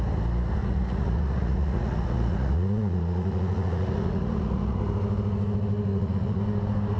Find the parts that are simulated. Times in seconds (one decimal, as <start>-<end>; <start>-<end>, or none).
0.6-4.8; 5.9-6.4